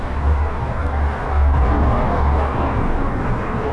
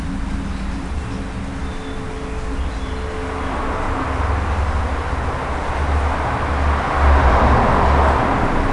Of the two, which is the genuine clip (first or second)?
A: second